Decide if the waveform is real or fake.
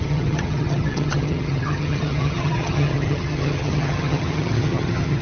fake